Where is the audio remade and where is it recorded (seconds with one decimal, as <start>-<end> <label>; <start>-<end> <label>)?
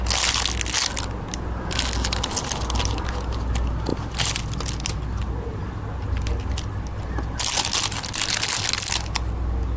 0.0-9.8 recorded